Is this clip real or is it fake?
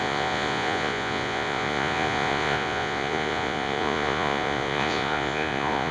fake